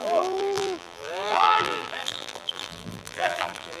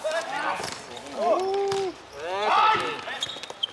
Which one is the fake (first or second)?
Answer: first